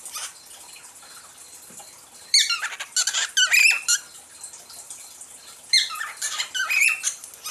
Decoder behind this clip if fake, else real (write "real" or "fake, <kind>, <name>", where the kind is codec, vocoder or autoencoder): real